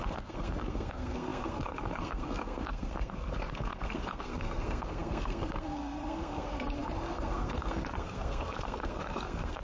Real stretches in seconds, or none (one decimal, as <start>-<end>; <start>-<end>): none